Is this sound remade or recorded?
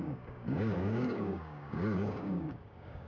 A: remade